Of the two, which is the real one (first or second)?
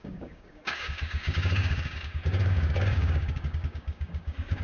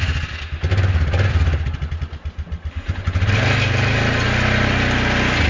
second